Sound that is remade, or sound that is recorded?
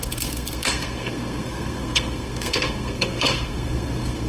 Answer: remade